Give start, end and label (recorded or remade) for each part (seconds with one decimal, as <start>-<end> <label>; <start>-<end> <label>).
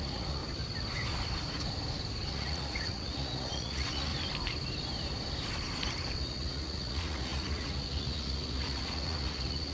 0.0-0.4 remade; 0.4-2.3 recorded; 2.3-4.1 remade; 4.1-6.2 recorded; 6.2-9.7 remade